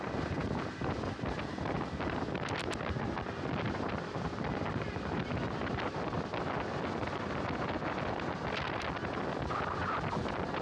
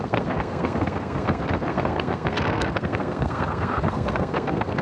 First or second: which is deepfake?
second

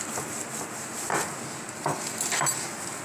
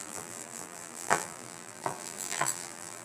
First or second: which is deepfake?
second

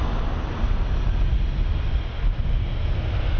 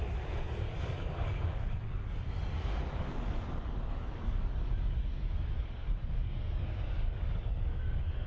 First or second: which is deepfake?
second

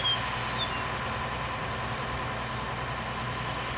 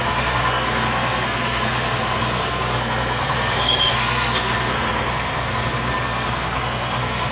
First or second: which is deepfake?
second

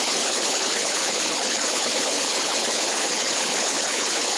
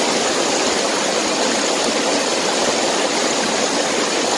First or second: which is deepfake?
first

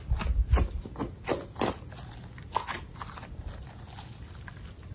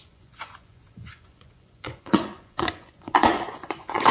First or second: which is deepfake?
second